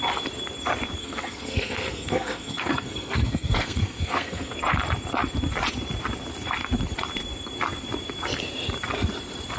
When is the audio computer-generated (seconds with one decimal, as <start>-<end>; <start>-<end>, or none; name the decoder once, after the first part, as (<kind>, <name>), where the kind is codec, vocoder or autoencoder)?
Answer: 1.0-4.5 (codec, SNAC)